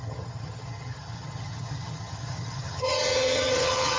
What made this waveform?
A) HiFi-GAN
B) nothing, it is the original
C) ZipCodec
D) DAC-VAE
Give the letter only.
A